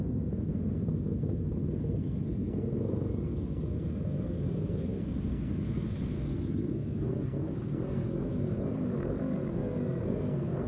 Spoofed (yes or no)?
yes